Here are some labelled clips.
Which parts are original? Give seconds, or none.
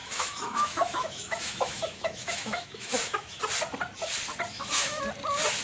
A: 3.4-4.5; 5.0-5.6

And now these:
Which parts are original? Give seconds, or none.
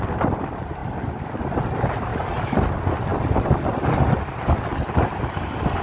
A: 0.0-5.8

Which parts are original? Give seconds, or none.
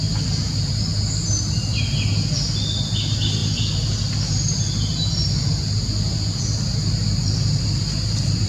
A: 0.0-3.4; 6.4-8.5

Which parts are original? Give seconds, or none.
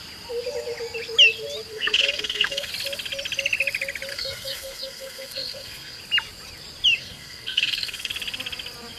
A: 0.0-1.7; 2.7-4.1; 6.0-7.0; 8.1-9.0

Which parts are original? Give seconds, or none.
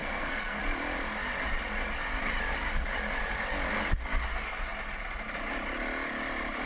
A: 0.6-6.7